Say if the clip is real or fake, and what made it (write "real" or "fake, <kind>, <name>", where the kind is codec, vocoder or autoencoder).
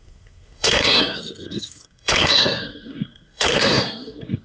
fake, codec, SNAC